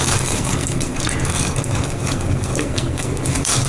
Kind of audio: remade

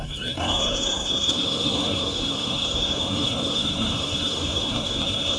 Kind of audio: remade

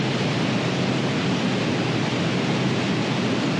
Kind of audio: recorded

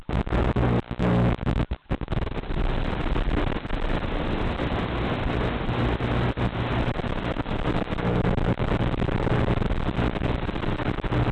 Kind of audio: recorded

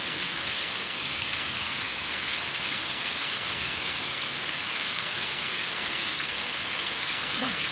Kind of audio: remade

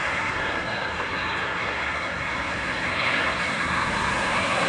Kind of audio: remade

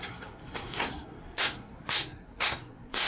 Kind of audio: remade